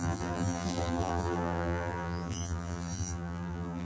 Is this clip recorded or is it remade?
remade